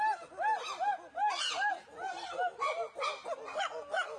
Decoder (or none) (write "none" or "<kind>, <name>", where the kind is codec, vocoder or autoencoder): none